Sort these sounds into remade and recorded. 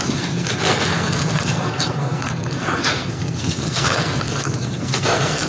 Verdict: remade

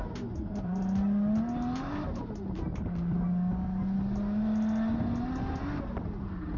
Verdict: recorded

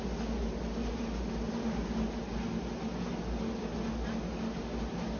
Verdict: recorded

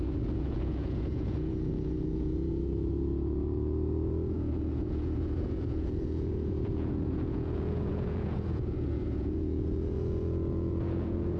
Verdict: remade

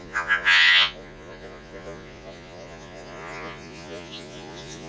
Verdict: remade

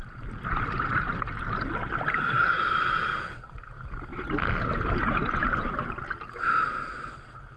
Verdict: recorded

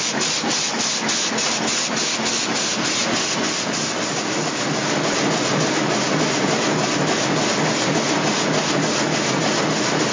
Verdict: recorded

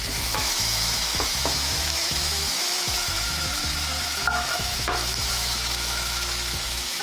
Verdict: remade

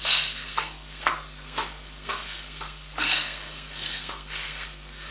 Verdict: remade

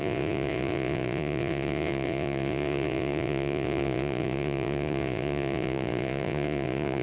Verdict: remade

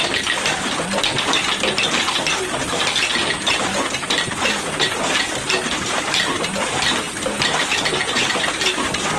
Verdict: recorded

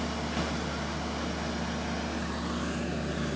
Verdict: recorded